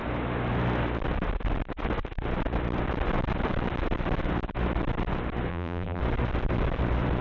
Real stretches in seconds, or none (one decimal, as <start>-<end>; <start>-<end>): 0.0-5.5; 6.0-7.2